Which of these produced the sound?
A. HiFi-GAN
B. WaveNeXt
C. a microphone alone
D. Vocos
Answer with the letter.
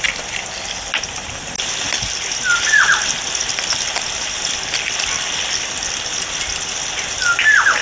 C